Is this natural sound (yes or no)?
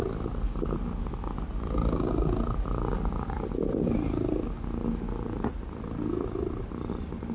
yes